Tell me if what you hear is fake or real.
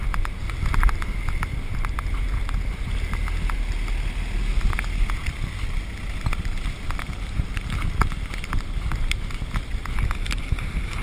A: real